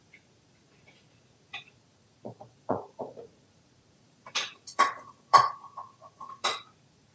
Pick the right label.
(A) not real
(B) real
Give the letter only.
A